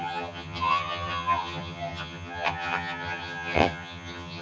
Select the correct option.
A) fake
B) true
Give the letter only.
A